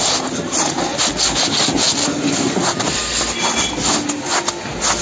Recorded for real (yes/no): yes